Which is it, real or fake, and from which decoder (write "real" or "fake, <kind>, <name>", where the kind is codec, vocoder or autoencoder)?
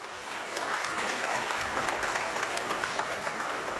fake, codec, DAC